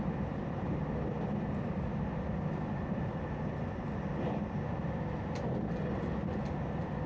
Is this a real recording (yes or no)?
yes